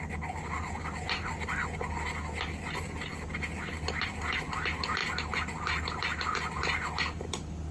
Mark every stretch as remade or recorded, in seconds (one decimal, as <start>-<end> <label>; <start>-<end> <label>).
0.0-7.7 recorded